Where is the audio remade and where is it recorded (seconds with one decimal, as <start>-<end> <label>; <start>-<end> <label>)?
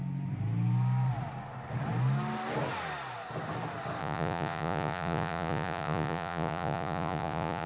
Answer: 0.0-4.0 recorded; 4.0-7.7 remade